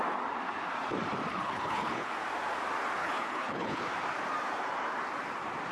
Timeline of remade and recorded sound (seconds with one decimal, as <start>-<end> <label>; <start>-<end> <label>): 0.0-1.3 recorded; 1.3-2.1 remade; 2.1-3.0 recorded; 3.0-3.9 remade; 3.9-5.7 recorded